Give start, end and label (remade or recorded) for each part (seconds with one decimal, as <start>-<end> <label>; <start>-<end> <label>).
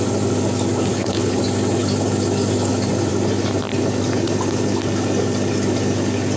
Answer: 0.0-0.9 recorded; 0.9-1.4 remade; 1.4-6.4 recorded